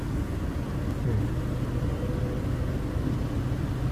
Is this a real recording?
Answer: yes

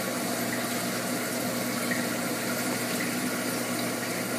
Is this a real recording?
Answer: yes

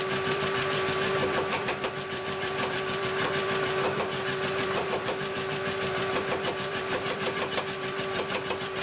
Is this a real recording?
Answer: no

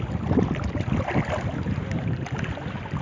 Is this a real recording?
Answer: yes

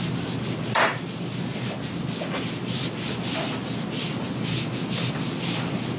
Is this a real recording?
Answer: yes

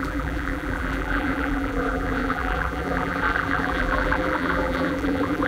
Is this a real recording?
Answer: no